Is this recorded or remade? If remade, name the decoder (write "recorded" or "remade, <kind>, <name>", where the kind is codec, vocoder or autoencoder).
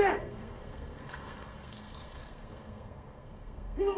remade, codec, SNAC